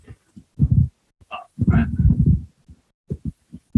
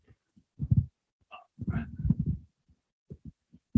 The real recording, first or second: first